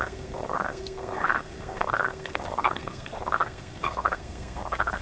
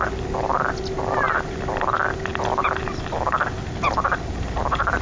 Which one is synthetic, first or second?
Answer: first